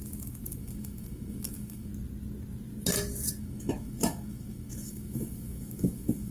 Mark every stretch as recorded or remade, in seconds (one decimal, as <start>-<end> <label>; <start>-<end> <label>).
0.0-1.9 remade; 1.9-3.4 recorded; 3.4-6.3 remade